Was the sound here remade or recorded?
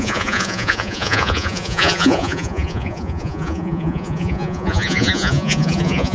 remade